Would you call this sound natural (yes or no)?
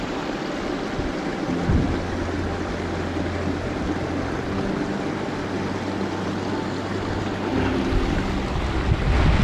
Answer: yes